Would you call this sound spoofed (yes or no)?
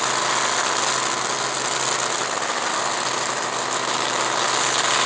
no